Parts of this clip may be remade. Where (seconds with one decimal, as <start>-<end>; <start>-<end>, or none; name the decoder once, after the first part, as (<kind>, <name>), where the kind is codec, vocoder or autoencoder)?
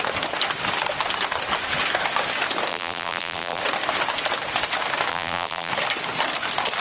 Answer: 2.7-3.6 (vocoder, BigVGAN v2); 5.1-5.7